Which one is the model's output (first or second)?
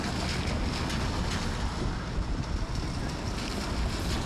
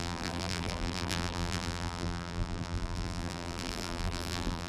second